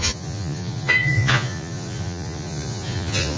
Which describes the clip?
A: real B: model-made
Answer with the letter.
B